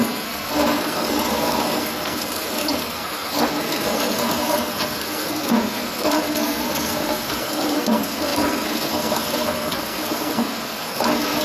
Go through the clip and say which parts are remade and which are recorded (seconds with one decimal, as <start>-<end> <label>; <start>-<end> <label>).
0.0-11.4 remade